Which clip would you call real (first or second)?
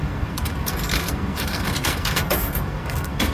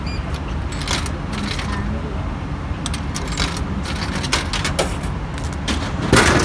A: second